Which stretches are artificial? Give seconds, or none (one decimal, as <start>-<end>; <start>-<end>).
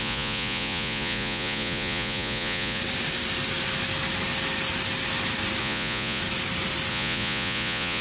0.0-2.8; 5.6-6.2; 6.9-8.0